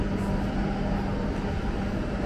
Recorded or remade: recorded